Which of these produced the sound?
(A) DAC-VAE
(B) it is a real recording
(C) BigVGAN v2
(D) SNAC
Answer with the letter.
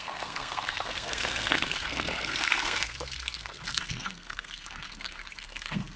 D